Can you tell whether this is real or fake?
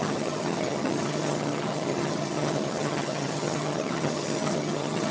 fake